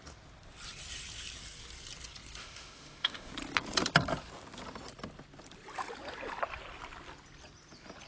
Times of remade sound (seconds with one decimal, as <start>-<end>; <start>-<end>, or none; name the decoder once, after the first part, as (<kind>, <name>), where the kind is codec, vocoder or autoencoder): 2.4-3.3 (autoencoder, DAC-VAE)